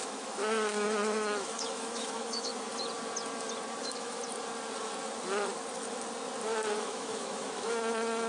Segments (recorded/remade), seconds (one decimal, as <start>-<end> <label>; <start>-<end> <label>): 0.0-2.5 remade; 2.5-3.8 recorded; 3.8-4.2 remade; 4.2-6.8 recorded; 6.8-8.3 remade